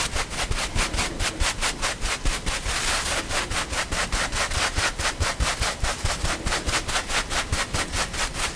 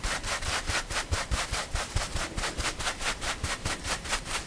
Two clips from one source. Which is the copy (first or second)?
second